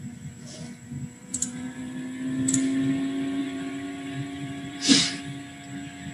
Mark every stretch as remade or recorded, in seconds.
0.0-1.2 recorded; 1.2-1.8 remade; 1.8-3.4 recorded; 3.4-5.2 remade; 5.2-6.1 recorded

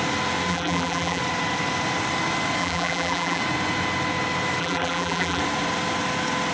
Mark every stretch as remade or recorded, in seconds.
0.0-0.5 recorded; 0.5-1.2 remade; 1.2-2.6 recorded; 2.6-3.4 remade; 3.4-4.6 recorded; 4.6-5.4 remade; 5.4-6.5 recorded

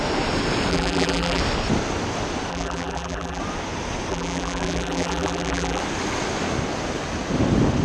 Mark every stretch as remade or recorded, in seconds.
0.0-0.7 recorded; 0.7-1.4 remade; 1.4-2.5 recorded; 2.5-3.4 remade; 3.4-4.1 recorded; 4.1-5.8 remade; 5.8-7.8 recorded

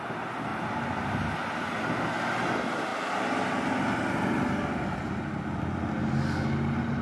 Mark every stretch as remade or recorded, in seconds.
0.0-0.5 recorded; 0.5-1.0 remade; 1.0-7.0 recorded